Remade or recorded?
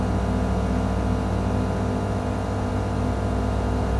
recorded